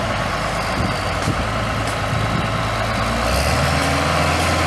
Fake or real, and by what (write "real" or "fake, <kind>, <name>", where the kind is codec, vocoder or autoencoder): real